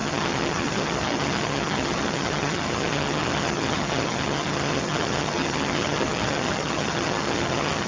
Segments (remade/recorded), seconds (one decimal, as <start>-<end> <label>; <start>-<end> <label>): 0.0-7.9 remade